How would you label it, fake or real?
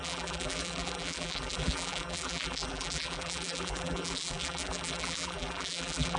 fake